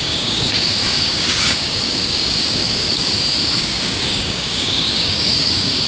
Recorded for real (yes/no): no